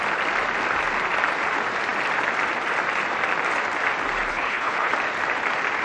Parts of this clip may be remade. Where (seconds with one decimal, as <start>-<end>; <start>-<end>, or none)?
4.3-4.9